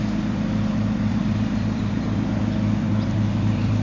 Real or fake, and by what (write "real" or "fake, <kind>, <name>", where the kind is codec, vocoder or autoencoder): fake, vocoder, BigVGAN v2